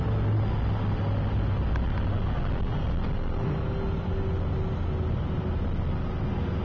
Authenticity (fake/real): real